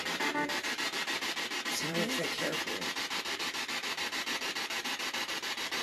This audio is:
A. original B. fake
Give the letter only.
B